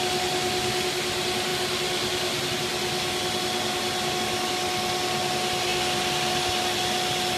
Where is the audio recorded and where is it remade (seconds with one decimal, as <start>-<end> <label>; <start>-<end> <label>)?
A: 0.0-7.4 recorded